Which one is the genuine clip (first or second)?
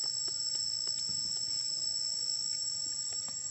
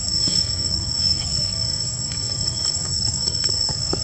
first